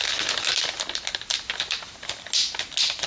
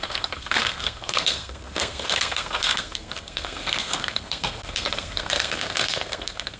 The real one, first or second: first